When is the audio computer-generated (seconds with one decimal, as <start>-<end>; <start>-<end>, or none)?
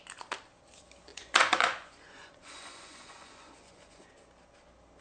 1.1-4.1